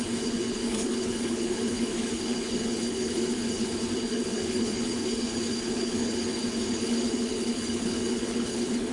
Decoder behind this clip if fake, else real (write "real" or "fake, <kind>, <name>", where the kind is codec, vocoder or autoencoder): fake, codec, HILCodec